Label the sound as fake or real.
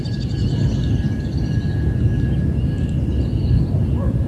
real